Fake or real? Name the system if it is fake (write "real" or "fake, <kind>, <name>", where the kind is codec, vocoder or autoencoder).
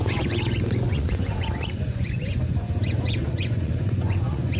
fake, vocoder, Vocos